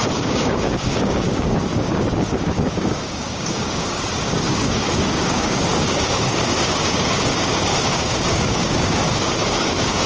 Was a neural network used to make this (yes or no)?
yes